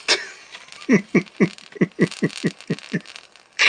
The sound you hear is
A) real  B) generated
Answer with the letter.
A